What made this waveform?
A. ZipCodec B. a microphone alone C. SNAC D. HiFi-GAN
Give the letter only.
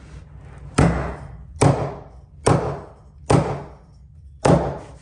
B